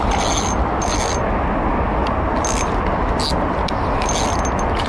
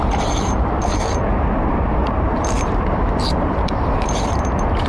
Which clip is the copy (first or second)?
second